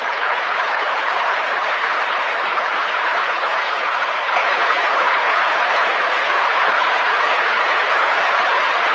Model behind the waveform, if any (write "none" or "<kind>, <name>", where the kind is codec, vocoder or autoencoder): codec, HILCodec